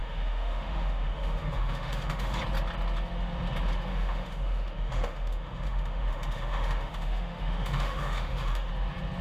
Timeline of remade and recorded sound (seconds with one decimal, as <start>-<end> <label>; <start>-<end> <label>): 0.0-2.4 remade; 2.4-3.9 recorded; 3.9-8.7 remade; 8.7-9.2 recorded